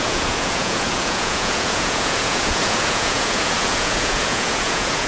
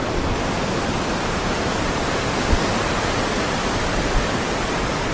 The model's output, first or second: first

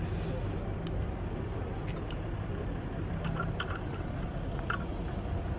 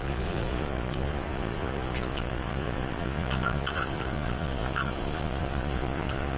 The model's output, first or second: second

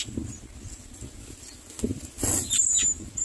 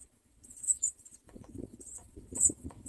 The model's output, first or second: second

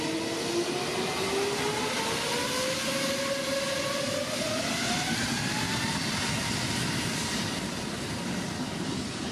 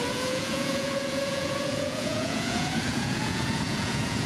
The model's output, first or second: second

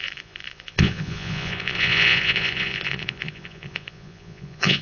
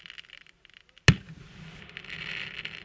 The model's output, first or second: first